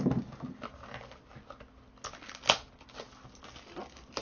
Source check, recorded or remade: recorded